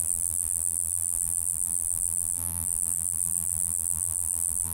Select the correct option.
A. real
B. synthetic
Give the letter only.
B